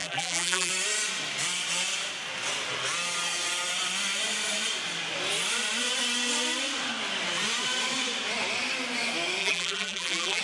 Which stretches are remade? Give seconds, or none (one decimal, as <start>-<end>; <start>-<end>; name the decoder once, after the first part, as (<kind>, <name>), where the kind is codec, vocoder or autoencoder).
0.0-0.7 (vocoder, BigVGAN v2); 9.4-10.4